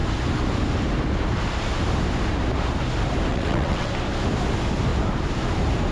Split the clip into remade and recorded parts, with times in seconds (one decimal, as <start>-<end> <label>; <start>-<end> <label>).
0.0-3.3 recorded; 3.3-3.9 remade; 3.9-5.9 recorded